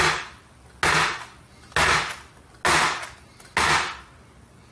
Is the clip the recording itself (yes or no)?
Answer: yes